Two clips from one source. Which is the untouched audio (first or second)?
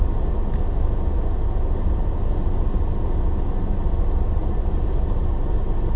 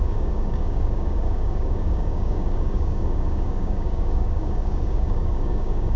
first